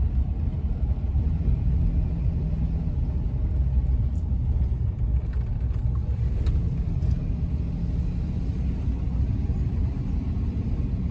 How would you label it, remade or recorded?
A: recorded